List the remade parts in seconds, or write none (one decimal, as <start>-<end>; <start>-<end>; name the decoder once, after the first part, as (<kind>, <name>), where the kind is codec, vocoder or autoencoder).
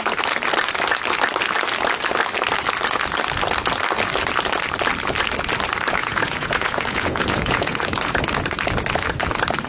6.0-8.2 (vocoder, Vocos)